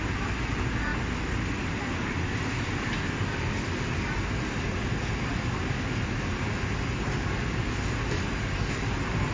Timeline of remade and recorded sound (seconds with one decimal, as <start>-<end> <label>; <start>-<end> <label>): 0.0-9.3 recorded